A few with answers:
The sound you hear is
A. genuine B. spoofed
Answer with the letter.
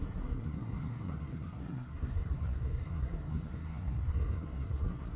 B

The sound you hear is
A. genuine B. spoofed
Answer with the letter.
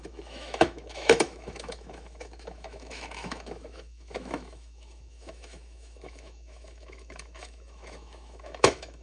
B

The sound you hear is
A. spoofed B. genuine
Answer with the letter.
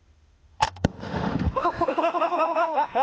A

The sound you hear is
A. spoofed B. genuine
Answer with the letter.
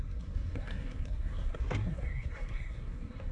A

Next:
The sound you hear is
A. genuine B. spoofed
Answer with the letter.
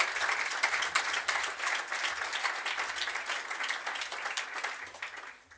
A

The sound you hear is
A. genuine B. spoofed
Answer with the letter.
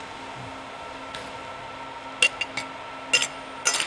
A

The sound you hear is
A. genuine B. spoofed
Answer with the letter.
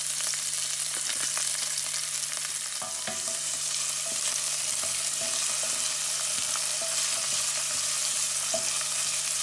A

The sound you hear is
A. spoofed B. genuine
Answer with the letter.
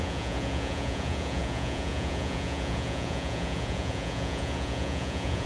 A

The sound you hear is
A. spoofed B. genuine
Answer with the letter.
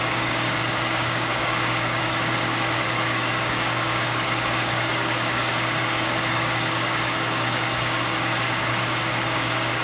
A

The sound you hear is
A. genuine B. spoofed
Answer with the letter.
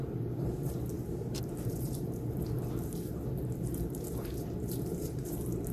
B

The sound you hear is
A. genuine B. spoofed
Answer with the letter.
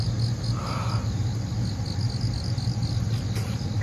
A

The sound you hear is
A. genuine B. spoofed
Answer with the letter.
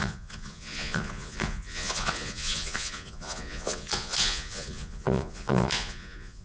B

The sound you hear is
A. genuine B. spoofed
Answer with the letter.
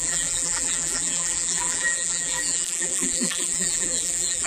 B